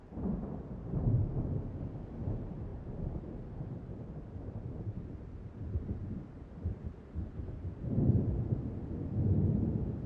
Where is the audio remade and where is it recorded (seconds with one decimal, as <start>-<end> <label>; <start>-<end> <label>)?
0.0-10.1 recorded